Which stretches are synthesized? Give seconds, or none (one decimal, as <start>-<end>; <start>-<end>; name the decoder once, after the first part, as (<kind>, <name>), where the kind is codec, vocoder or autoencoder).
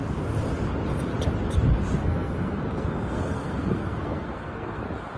2.0-4.8 (codec, SNAC)